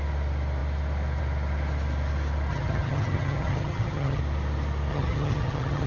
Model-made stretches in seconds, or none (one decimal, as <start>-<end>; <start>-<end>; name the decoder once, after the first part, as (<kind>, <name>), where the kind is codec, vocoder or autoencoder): 2.5-4.2 (vocoder, HiFi-GAN); 4.9-5.9